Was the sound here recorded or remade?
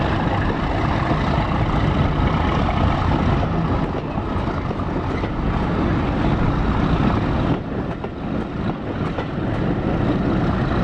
recorded